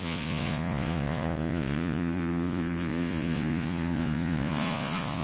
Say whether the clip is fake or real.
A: fake